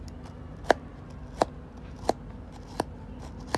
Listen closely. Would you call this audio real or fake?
real